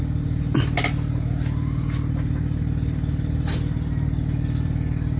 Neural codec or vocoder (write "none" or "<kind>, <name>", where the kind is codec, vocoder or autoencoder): none